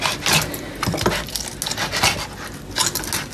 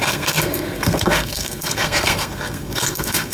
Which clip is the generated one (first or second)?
second